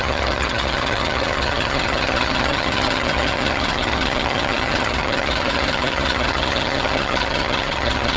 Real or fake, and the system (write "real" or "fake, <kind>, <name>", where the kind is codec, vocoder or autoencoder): fake, vocoder, HiFi-GAN